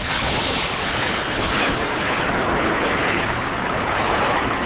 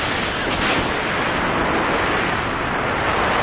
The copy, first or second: first